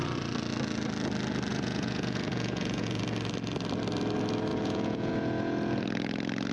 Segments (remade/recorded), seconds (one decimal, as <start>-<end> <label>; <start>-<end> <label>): 0.0-1.5 recorded; 1.5-3.0 remade; 3.0-4.5 recorded; 4.5-5.1 remade; 5.1-6.5 recorded